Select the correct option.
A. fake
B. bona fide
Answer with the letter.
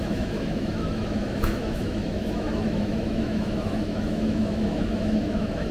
A